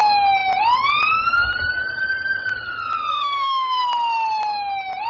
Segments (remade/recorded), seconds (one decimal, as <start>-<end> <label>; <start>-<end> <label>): 0.0-3.1 recorded; 3.1-3.8 remade; 3.8-5.1 recorded